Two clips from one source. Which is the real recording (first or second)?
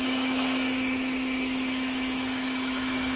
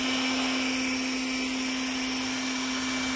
second